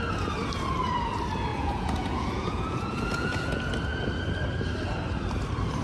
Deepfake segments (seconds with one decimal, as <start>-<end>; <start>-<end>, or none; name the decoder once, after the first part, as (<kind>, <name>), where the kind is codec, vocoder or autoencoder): 1.5-3.7 (vocoder, Vocos)